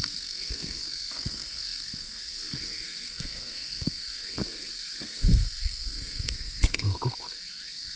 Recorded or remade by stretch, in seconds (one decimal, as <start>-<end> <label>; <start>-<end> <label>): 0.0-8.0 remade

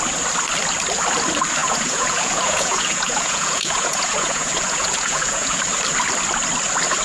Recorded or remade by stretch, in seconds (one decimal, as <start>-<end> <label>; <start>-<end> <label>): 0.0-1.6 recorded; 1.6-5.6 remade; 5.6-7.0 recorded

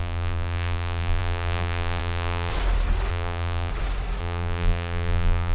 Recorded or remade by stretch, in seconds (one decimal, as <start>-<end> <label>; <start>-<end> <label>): 0.0-2.5 remade; 2.5-3.1 recorded; 3.1-3.7 remade; 3.7-4.2 recorded; 4.2-5.5 remade